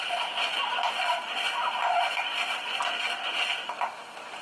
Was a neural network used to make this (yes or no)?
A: no